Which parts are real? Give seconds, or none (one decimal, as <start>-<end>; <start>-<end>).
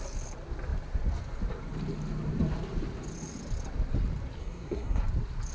0.0-4.4; 5.0-5.5